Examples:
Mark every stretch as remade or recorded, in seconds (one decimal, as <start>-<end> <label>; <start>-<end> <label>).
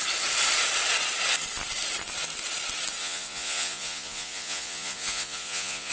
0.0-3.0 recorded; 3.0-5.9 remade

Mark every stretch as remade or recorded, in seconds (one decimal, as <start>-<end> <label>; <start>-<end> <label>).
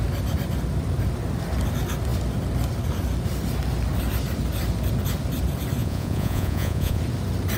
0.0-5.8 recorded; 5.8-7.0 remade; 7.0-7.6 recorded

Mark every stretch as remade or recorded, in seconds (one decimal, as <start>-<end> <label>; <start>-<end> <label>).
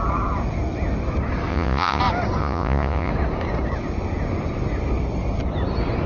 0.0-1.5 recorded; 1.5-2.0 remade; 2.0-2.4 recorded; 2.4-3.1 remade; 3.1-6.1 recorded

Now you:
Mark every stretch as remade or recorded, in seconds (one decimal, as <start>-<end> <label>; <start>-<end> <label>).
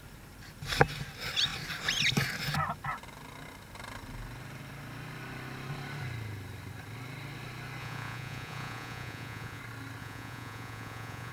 0.0-7.8 recorded; 7.8-9.6 remade; 9.6-10.0 recorded; 10.0-11.3 remade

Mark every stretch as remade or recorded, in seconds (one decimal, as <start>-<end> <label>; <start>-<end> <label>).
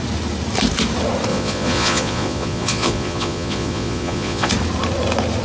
0.0-1.3 recorded; 1.3-4.5 remade; 4.5-5.4 recorded